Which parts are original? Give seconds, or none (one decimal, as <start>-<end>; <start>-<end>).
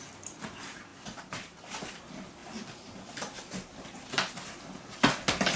0.0-5.6